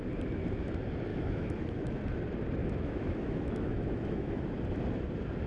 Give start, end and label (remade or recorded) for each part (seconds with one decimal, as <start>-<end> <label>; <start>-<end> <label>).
0.0-1.1 recorded; 1.1-2.0 remade; 2.0-2.6 recorded; 2.6-4.4 remade; 4.4-5.5 recorded